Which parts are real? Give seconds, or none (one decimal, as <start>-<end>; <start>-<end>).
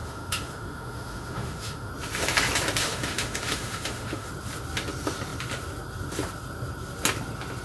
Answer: 1.9-2.8; 4.3-7.6